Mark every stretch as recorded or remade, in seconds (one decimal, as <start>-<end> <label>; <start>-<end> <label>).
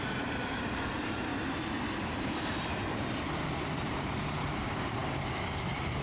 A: 0.0-1.3 remade; 1.3-2.0 recorded; 2.0-2.8 remade; 2.8-3.3 recorded; 3.3-6.0 remade